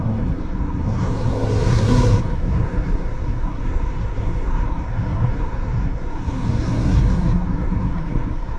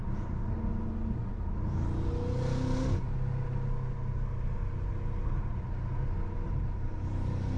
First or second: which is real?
second